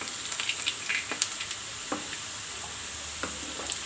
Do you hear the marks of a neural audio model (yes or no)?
yes